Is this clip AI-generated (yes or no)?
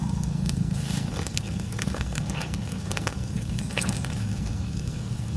yes